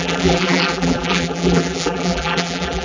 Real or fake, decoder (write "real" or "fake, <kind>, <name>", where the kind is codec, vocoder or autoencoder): fake, vocoder, BigVGAN v2